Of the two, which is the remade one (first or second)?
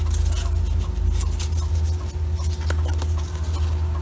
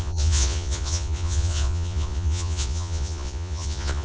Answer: second